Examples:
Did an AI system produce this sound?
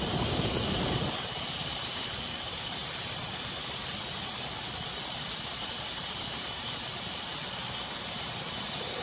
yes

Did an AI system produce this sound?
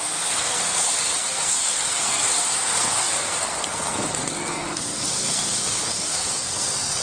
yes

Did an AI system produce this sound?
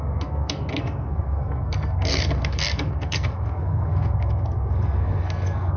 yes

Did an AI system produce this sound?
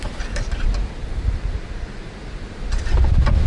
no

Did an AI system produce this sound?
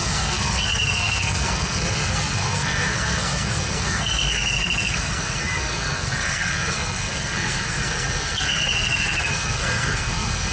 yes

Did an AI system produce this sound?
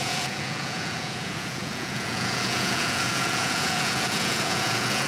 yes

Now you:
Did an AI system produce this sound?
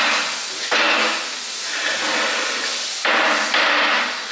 no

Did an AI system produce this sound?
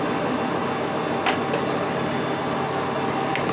no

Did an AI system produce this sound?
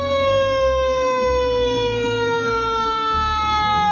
yes